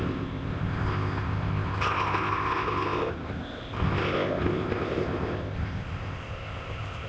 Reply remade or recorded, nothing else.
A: remade